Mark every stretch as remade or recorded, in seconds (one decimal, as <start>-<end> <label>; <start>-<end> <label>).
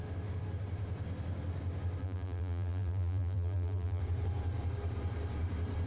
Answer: 0.0-2.0 recorded; 2.0-4.0 remade; 4.0-5.9 recorded